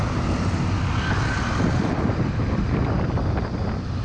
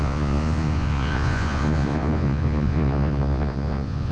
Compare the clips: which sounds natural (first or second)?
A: first